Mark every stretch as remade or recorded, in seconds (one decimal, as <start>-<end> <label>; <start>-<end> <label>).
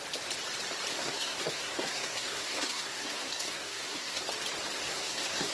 0.0-0.9 recorded; 0.9-4.2 remade; 4.2-4.8 recorded; 4.8-5.5 remade